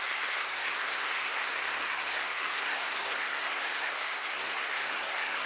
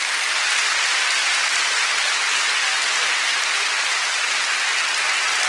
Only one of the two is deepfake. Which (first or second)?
first